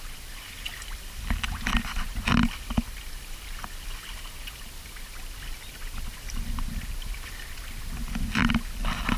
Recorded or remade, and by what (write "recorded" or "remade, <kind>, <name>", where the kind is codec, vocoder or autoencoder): recorded